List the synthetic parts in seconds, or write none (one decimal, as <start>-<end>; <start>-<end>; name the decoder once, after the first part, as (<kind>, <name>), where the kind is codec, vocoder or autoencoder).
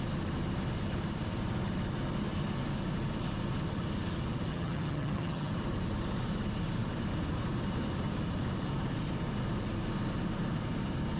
4.5-5.5 (vocoder, HiFi-GAN)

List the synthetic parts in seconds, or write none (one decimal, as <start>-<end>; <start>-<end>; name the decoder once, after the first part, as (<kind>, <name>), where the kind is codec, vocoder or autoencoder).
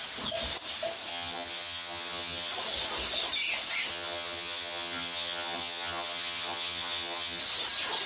1.1-2.5 (vocoder, HiFi-GAN); 3.9-7.4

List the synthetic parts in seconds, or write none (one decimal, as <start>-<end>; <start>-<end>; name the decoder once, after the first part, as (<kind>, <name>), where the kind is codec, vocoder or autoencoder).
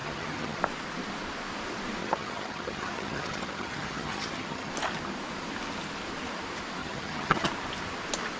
0.0-0.6 (vocoder, HiFi-GAN); 2.0-4.7; 6.8-7.5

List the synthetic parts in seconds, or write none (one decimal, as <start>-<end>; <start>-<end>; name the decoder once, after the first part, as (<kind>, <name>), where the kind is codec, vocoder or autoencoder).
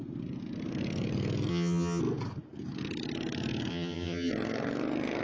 1.5-2.0 (vocoder, HiFi-GAN); 3.7-4.3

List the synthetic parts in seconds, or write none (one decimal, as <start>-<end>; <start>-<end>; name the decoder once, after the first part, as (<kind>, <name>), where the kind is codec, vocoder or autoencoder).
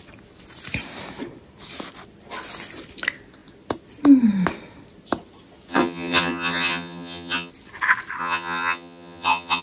5.7-7.5 (vocoder, HiFi-GAN); 8.2-9.6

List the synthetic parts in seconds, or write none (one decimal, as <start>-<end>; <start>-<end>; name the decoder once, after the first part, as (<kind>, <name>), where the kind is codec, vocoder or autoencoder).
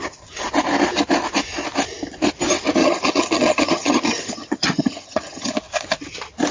2.8-5.5 (vocoder, HiFi-GAN)